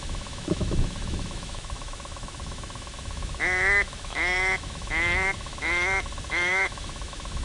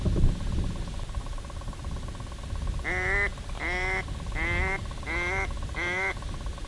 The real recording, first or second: second